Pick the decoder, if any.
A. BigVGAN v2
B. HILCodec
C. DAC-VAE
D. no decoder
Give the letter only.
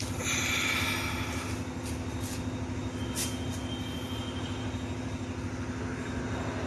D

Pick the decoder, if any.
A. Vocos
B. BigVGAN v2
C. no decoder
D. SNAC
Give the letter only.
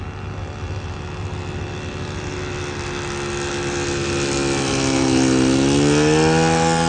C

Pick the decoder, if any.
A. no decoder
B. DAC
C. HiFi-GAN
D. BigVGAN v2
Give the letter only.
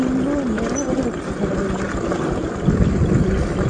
A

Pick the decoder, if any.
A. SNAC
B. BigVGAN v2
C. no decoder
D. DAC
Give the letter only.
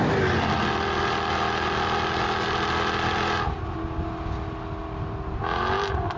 C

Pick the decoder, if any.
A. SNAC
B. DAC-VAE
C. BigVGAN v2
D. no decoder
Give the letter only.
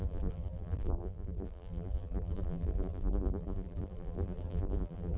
C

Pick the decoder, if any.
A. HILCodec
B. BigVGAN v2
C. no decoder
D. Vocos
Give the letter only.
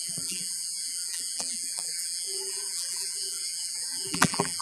B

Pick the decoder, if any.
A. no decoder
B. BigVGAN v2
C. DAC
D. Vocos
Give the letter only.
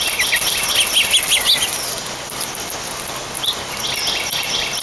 A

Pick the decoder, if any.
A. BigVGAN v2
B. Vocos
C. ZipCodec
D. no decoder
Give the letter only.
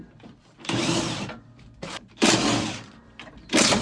A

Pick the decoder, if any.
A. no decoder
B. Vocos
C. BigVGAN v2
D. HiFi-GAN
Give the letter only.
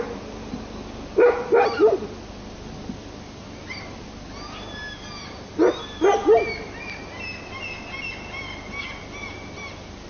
A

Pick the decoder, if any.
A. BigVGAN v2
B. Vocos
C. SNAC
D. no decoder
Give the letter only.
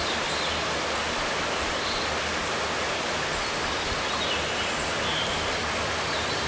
D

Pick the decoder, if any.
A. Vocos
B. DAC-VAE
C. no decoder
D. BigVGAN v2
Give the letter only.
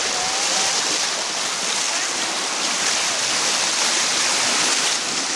C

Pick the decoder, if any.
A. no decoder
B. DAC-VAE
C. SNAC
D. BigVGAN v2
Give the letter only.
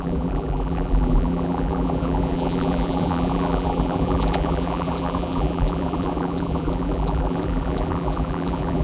D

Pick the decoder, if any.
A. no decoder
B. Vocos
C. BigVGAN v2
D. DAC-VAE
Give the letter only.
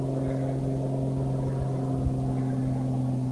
A